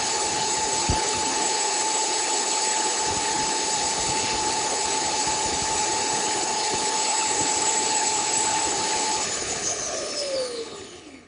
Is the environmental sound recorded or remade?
remade